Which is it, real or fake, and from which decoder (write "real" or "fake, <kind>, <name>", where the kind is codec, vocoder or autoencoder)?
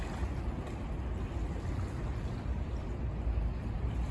real